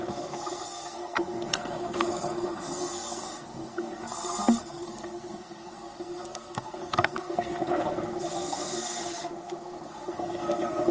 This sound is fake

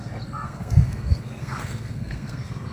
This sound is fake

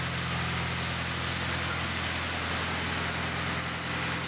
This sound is real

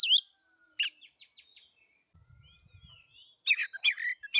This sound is real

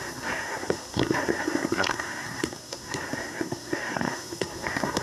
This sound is fake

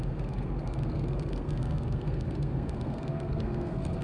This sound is fake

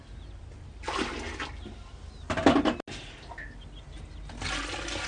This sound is real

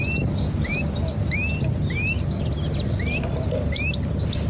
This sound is real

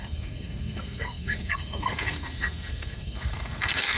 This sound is fake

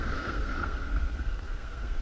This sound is fake